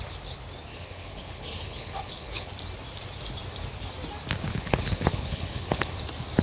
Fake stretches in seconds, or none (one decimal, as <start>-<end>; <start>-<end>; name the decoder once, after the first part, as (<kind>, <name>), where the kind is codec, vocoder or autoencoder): 0.7-2.5 (codec, HILCodec); 4.5-5.9